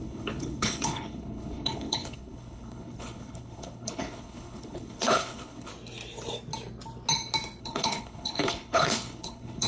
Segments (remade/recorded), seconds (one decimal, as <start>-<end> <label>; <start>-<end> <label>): 0.0-5.7 remade; 5.7-7.6 recorded; 7.6-9.7 remade